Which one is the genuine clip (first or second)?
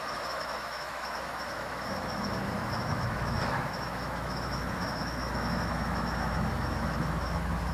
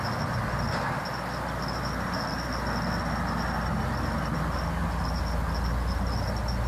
second